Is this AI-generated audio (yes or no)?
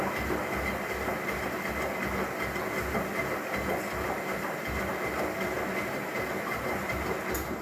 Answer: no